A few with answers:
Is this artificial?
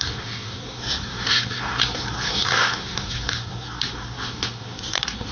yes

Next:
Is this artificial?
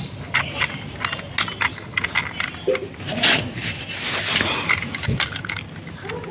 no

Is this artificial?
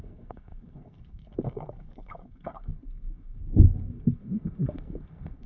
yes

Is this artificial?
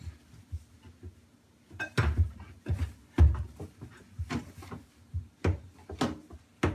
no